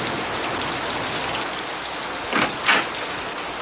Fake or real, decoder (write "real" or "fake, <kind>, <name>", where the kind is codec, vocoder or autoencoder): real